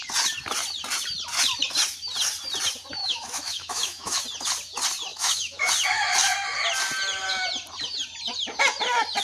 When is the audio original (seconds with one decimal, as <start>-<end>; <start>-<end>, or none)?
0.0-3.0; 4.2-5.1; 5.7-9.2

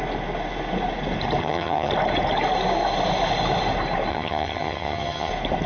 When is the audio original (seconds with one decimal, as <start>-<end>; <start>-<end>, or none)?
0.0-1.4; 1.9-4.1; 5.3-5.7